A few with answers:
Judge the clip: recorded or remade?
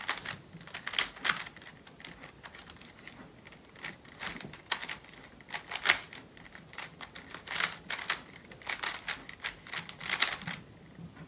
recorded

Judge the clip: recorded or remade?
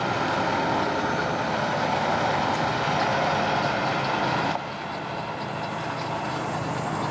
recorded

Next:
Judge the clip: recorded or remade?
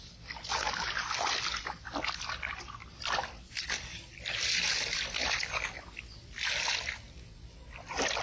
recorded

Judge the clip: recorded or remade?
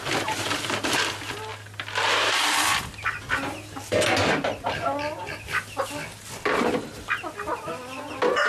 recorded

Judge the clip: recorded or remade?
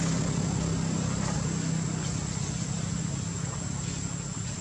recorded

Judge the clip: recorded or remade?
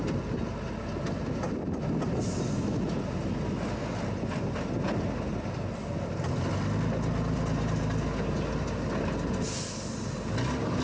recorded